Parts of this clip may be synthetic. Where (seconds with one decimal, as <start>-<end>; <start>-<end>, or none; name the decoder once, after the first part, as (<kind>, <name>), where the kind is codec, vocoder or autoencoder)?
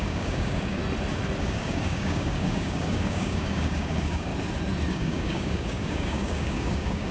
0.0-0.8 (codec, DAC); 1.4-4.3; 4.9-7.1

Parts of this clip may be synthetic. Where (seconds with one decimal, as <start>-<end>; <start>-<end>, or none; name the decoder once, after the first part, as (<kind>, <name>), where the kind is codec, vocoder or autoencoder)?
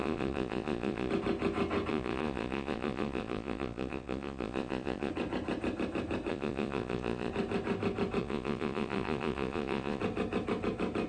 0.0-1.1 (vocoder, Vocos); 1.9-5.1; 6.3-7.3; 8.2-10.0